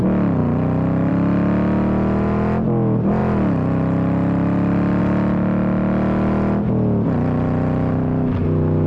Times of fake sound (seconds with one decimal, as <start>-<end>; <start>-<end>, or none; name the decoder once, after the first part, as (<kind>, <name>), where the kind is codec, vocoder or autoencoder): none